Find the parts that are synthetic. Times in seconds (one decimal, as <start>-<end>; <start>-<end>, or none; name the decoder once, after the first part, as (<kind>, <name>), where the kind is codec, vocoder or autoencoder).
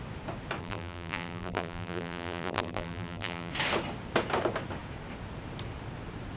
0.6-3.5 (vocoder, BigVGAN v2)